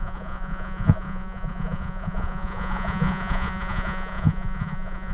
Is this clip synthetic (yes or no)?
yes